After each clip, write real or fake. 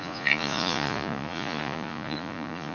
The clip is fake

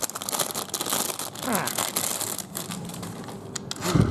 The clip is real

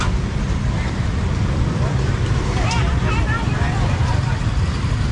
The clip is fake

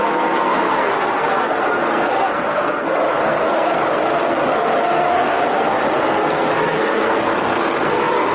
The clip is fake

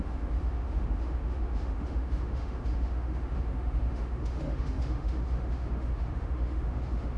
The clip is fake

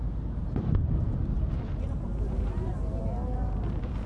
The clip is fake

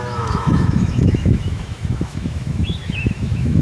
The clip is fake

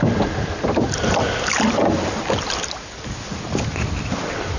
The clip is real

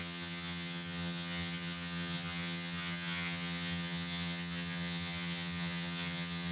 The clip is fake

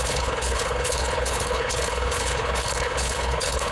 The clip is fake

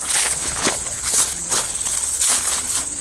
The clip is fake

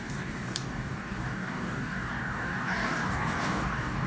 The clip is fake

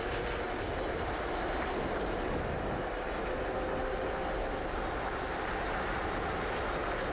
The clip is real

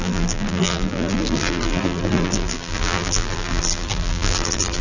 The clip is fake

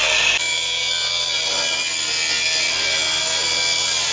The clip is real